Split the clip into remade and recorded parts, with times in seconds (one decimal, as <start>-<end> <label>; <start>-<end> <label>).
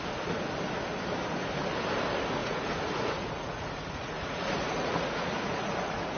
0.0-2.4 recorded; 2.4-6.2 remade